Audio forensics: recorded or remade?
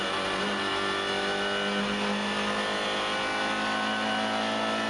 recorded